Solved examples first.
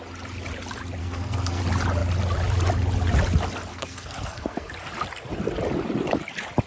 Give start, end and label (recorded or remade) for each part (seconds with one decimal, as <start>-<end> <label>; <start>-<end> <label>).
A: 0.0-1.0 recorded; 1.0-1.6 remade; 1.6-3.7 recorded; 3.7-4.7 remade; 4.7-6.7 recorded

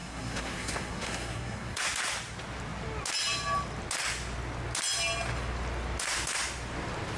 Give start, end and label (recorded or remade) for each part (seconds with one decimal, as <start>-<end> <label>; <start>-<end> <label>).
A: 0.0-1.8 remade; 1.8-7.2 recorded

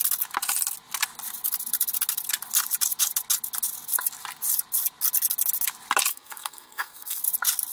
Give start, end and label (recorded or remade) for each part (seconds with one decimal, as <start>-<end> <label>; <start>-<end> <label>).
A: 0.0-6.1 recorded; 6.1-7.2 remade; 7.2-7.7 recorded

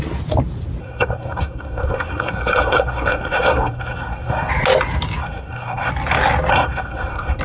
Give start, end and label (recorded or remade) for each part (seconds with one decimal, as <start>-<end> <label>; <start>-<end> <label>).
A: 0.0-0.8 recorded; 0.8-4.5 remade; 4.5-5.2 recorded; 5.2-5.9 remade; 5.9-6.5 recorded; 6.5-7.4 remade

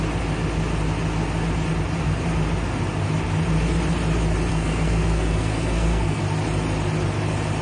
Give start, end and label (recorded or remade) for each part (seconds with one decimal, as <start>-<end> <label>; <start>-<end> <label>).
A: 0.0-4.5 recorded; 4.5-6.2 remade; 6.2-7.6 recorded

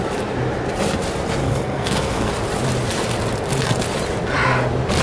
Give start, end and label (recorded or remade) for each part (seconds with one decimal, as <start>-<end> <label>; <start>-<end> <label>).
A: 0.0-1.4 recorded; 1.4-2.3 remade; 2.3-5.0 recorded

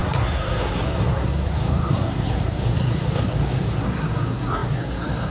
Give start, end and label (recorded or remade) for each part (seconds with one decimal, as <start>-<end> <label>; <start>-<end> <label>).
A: 0.0-5.3 remade